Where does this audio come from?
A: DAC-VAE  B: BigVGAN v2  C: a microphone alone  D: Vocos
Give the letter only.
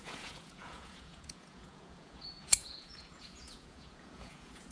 D